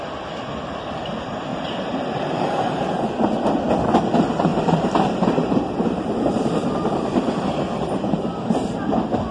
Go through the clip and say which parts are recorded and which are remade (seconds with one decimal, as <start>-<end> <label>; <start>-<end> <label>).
0.0-1.5 recorded; 1.5-3.1 remade; 3.1-4.5 recorded; 4.5-8.0 remade; 8.0-9.3 recorded